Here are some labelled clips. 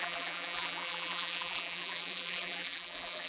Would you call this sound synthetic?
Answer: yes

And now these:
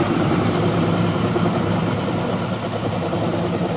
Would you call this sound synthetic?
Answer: yes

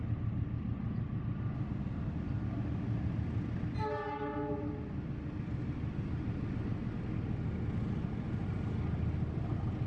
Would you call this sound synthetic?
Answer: no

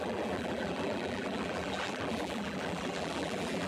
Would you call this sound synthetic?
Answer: yes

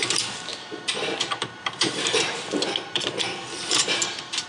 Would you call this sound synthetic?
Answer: yes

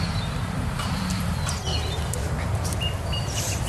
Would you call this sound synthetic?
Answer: yes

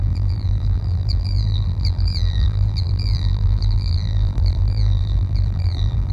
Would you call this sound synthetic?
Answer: yes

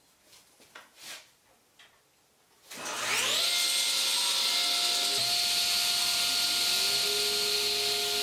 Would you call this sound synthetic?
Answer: no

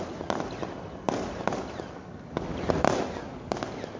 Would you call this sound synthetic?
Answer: no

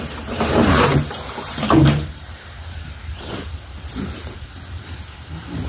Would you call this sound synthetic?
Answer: yes